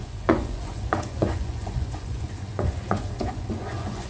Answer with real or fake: fake